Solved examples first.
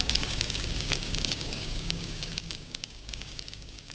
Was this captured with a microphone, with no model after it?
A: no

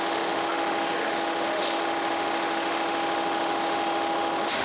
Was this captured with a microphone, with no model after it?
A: no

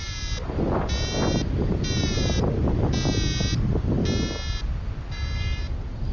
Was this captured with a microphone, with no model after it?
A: yes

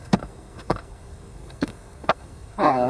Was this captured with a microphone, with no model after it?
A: no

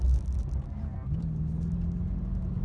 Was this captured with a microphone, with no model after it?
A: yes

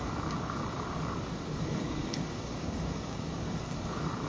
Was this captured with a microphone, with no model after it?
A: no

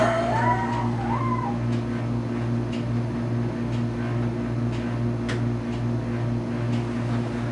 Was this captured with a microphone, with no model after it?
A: yes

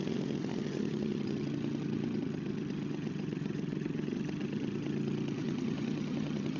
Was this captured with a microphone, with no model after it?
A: no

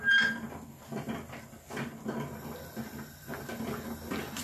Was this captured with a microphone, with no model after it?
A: yes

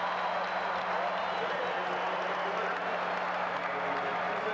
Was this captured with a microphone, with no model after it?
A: yes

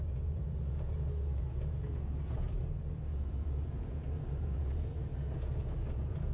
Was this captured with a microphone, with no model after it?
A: no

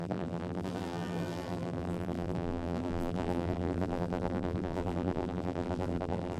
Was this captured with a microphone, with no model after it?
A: no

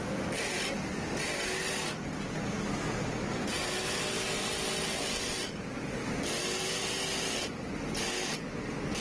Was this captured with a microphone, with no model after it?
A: yes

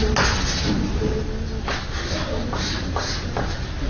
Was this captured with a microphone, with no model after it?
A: yes